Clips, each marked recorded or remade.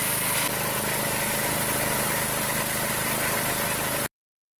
recorded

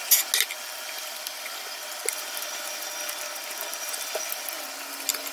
recorded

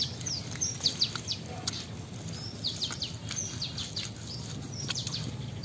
recorded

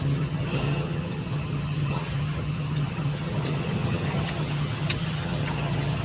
remade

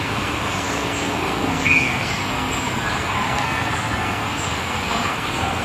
remade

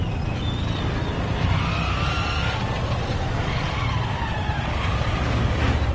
recorded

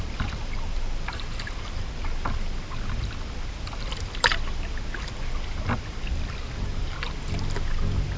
recorded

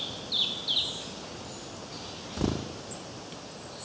recorded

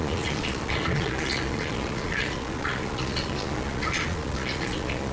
remade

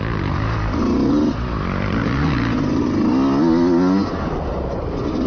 recorded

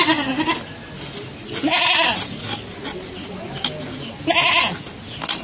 recorded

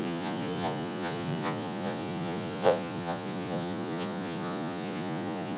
remade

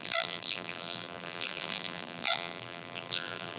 remade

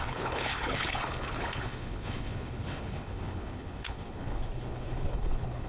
remade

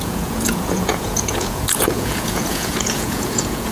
remade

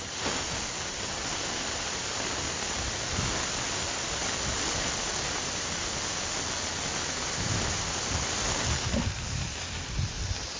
recorded